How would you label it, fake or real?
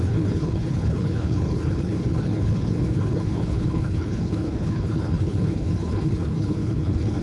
fake